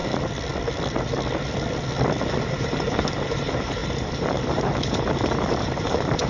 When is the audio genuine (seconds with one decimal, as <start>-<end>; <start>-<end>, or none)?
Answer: 0.0-2.3